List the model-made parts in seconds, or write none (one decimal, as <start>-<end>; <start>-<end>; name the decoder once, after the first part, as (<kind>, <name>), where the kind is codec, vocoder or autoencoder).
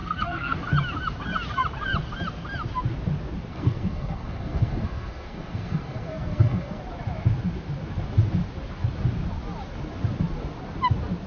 0.0-0.6 (codec, SNAC); 3.5-6.8